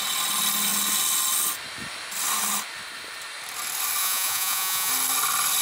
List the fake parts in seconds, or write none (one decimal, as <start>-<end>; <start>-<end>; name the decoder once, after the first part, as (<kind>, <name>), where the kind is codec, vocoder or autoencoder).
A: 4.0-4.9 (vocoder, Vocos)